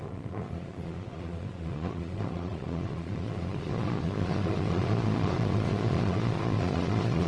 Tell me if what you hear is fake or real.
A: fake